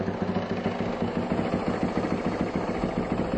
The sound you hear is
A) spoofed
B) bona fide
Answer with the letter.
B